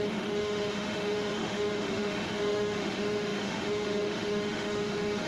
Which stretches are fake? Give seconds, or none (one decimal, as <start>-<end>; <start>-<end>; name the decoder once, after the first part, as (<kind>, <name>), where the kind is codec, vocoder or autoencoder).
0.0-5.3 (autoencoder, DAC-VAE)